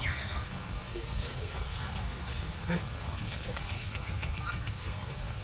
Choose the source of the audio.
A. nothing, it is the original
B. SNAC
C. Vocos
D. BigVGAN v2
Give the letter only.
B